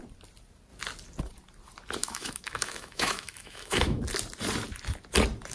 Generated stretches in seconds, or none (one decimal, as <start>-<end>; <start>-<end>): 2.0-4.0